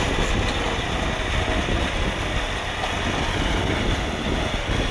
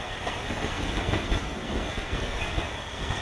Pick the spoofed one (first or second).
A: second